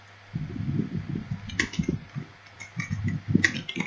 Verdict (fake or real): real